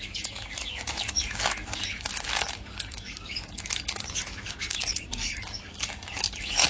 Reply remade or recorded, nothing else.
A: remade